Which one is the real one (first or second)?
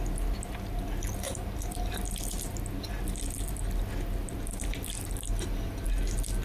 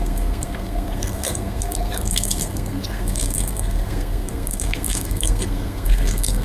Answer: first